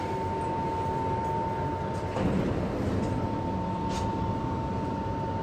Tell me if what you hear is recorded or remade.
recorded